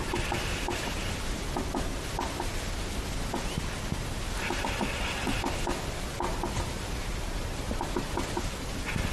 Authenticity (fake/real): real